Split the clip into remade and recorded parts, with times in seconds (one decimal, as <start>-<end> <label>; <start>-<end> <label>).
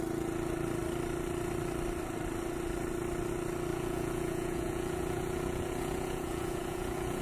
0.0-3.7 recorded; 3.7-7.2 remade